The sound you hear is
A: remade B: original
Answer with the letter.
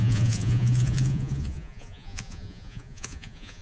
A